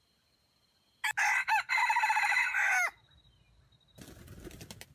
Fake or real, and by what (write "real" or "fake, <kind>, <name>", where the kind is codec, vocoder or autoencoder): real